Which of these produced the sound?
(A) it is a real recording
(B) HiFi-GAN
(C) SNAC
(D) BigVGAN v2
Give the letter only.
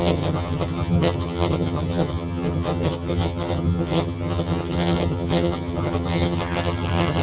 B